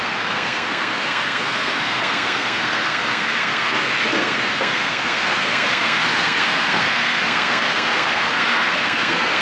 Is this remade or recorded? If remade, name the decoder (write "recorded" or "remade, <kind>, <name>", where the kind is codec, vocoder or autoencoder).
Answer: remade, codec, SNAC